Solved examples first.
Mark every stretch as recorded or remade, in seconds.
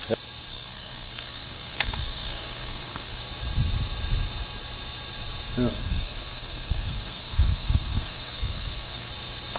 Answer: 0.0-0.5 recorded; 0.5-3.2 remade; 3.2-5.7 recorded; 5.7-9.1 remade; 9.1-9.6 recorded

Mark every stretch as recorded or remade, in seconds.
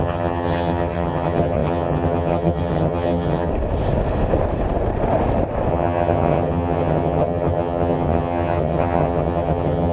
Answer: 0.0-3.5 remade; 3.5-5.7 recorded; 5.7-9.9 remade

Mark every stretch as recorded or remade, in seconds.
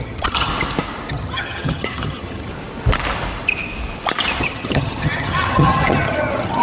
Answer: 0.0-0.5 remade; 0.5-1.1 recorded; 1.1-2.5 remade; 2.5-4.4 recorded; 4.4-6.6 remade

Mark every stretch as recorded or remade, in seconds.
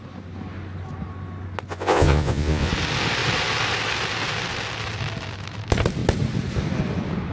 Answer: 0.0-1.7 recorded; 1.7-2.7 remade; 2.7-7.3 recorded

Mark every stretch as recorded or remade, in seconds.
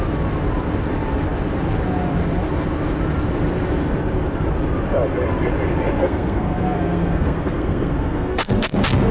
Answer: 0.0-6.0 recorded; 6.0-9.1 remade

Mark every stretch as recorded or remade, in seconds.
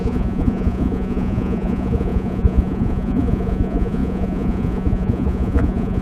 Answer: 0.0-6.0 remade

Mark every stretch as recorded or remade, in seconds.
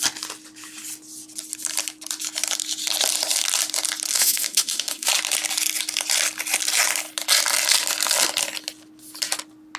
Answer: 0.0-4.1 recorded; 4.1-5.1 remade; 5.1-9.8 recorded